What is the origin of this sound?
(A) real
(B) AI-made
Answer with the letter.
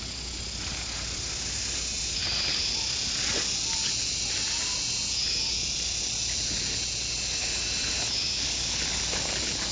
A